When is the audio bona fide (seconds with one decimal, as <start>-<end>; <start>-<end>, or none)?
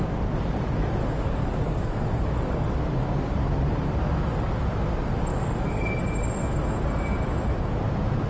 0.0-1.0; 2.8-5.3; 5.9-8.3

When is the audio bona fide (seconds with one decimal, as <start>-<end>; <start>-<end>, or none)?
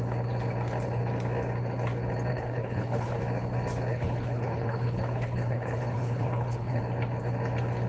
0.0-2.3; 3.2-3.9; 6.8-7.9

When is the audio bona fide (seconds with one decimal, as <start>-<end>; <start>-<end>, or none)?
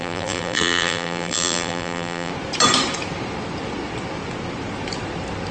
2.3-5.5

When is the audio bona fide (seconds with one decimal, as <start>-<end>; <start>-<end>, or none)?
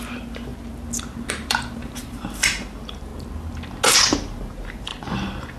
0.5-1.3; 3.1-3.9; 4.9-5.6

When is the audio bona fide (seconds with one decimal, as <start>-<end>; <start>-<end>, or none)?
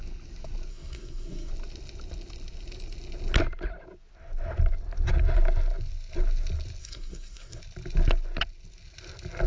0.0-0.7; 1.5-6.8; 7.6-9.5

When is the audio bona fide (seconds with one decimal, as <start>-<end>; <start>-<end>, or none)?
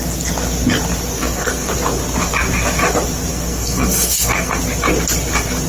0.0-1.2; 1.7-3.3; 4.6-5.7